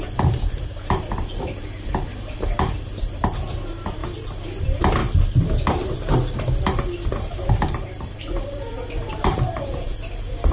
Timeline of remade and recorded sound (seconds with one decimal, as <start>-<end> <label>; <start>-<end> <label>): 0.0-4.0 remade; 4.0-4.6 recorded; 4.6-5.0 remade; 5.0-7.1 recorded; 7.1-10.5 remade